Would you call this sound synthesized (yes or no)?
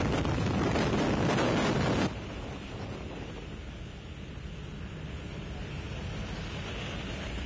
no